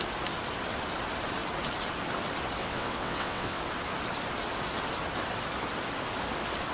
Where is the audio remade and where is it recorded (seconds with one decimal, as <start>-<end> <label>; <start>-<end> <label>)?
0.0-2.6 recorded; 2.6-3.6 remade; 3.6-6.7 recorded